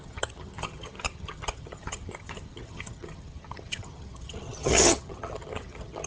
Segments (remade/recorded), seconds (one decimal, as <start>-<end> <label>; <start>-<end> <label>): 0.0-6.1 remade